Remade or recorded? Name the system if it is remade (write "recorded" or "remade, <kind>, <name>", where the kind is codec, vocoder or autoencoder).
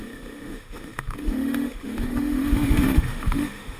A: remade, autoencoder, DAC-VAE